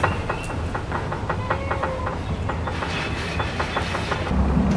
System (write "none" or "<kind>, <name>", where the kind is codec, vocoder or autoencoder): none